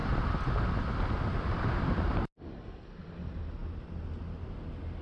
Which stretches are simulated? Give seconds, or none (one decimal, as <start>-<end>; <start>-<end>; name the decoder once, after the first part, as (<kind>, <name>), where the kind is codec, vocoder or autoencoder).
none